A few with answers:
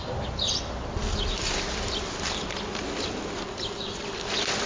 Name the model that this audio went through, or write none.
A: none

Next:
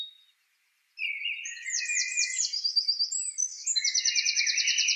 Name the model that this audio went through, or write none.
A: none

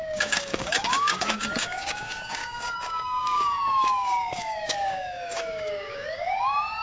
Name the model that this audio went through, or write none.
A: codec, DAC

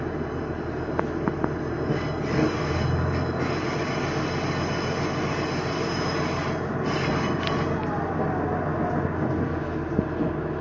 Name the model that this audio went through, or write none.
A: none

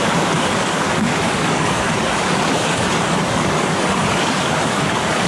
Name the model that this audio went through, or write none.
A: codec, DAC